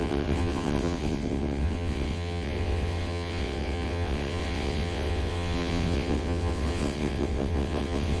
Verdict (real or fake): fake